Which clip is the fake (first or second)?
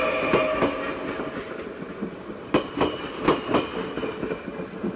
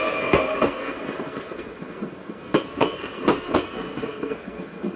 second